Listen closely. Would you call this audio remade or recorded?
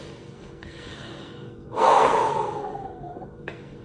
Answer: remade